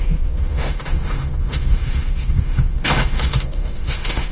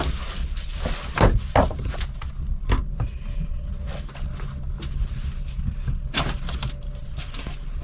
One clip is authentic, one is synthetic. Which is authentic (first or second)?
second